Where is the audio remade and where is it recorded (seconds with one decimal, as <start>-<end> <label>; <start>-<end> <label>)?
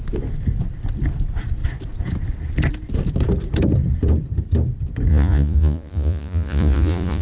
0.0-5.1 recorded; 5.1-7.2 remade